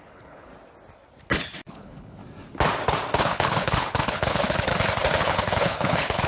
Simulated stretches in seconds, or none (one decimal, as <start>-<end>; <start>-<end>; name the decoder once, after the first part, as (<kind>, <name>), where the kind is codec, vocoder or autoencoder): 0.0-0.5 (codec, HILCodec); 1.7-2.2; 3.2-4.7; 5.2-6.3